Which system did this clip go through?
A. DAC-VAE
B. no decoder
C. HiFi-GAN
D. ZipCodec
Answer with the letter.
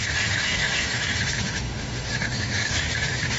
A